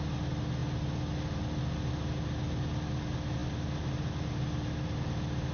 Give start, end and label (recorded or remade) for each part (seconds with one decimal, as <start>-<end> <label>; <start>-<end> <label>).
0.0-5.5 recorded